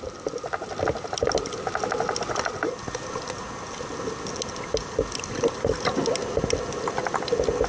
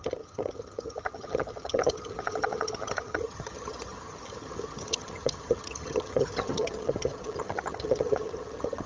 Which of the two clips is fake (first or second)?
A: second